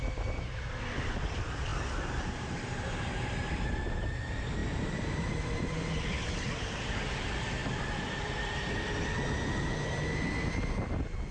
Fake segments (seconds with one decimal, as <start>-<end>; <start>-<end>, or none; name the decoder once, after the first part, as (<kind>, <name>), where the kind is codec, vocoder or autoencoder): 4.6-6.8 (vocoder, BigVGAN v2)